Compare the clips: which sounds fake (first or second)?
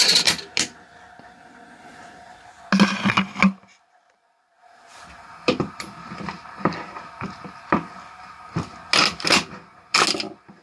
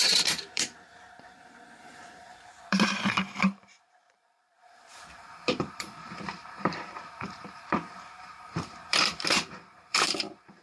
second